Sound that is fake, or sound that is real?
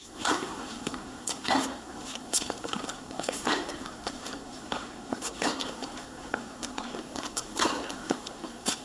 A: fake